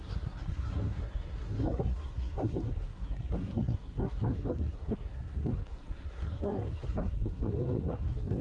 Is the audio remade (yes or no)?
yes